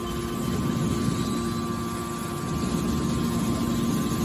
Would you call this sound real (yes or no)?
yes